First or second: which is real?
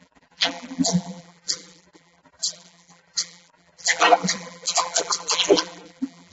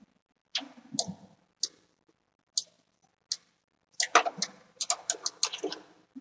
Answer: second